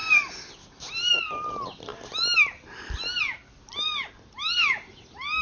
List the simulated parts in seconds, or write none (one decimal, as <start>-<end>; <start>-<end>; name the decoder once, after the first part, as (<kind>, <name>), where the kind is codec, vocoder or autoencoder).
none